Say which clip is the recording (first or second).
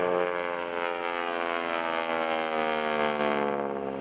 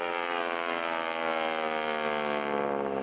first